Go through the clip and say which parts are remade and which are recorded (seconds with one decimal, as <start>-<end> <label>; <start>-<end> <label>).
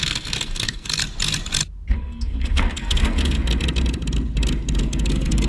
0.0-1.0 remade; 1.0-1.9 recorded; 1.9-3.4 remade; 3.4-4.8 recorded; 4.8-5.5 remade